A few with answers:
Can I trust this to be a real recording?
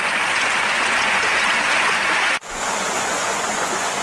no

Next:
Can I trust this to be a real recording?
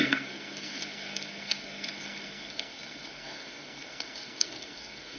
no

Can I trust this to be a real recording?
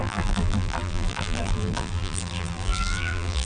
no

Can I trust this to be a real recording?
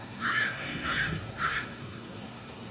no